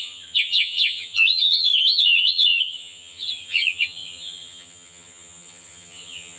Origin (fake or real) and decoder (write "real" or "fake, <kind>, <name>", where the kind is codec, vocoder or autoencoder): fake, vocoder, HiFi-GAN